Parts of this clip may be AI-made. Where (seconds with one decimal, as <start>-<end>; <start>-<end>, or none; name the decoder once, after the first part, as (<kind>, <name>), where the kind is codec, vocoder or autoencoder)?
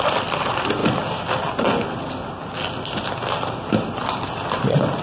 0.0-0.8 (vocoder, BigVGAN v2); 3.8-5.0